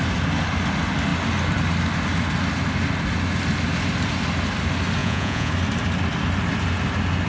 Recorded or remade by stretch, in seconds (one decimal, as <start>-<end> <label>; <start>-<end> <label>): 0.0-5.0 recorded; 5.0-5.5 remade; 5.5-7.3 recorded